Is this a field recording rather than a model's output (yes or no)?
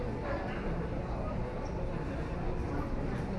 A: yes